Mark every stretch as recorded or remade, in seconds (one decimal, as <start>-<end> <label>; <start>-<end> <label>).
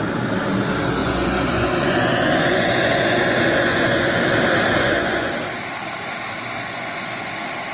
0.0-1.0 recorded; 1.0-4.2 remade; 4.2-4.8 recorded; 4.8-5.3 remade; 5.3-6.6 recorded; 6.6-7.3 remade; 7.3-7.7 recorded